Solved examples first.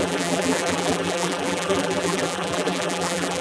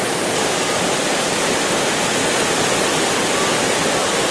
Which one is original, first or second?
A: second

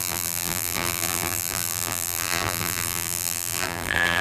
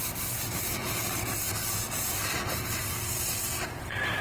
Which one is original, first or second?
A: second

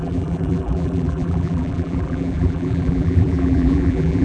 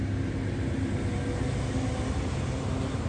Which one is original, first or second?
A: second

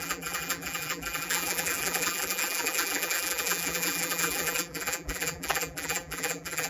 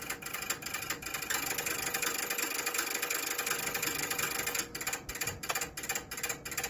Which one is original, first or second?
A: second